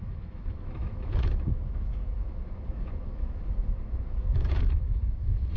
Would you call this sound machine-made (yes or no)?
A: yes